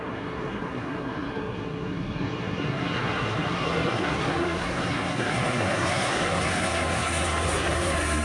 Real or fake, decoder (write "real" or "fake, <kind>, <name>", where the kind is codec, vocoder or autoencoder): fake, codec, SNAC